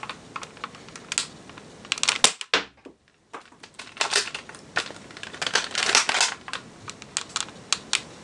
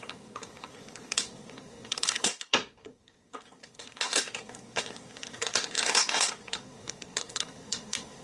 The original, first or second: first